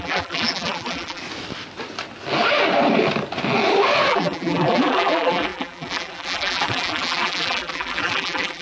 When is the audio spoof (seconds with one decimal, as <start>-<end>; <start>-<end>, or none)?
0.0-1.2; 4.1-8.6

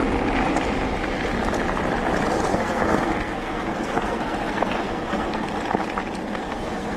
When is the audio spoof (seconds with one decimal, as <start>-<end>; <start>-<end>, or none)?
2.5-5.5; 6.2-7.0